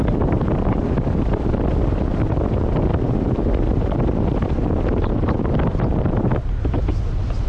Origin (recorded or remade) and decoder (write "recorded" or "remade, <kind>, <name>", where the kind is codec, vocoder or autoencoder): recorded